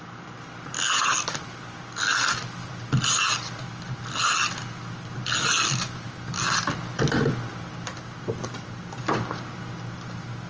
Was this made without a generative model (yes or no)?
yes